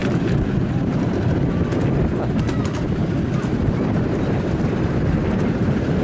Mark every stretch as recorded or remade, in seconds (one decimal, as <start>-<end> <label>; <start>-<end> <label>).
0.0-6.0 recorded